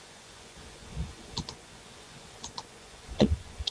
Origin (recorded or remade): remade